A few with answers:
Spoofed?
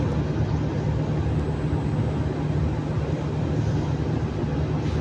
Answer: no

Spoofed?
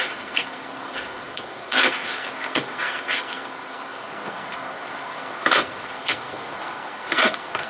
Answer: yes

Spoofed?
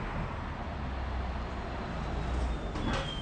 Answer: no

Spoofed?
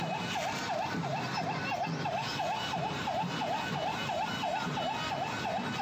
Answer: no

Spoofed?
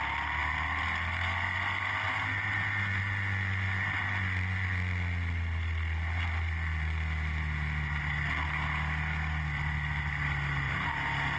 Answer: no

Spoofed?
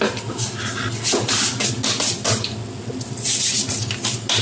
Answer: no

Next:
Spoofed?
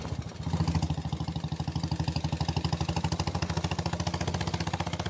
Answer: no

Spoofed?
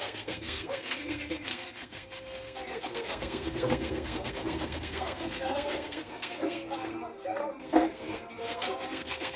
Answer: yes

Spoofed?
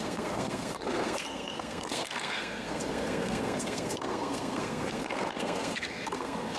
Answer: yes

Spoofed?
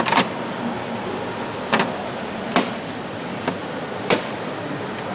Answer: no